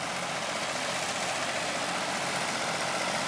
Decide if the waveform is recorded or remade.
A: recorded